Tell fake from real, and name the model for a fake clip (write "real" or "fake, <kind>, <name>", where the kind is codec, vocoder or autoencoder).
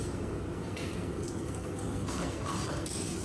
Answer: fake, codec, SNAC